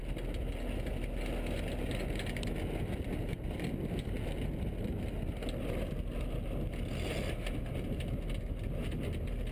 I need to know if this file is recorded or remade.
recorded